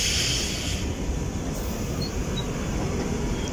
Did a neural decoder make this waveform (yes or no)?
no